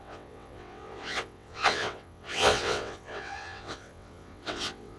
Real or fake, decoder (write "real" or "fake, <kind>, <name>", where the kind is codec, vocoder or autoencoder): fake, vocoder, WaveNeXt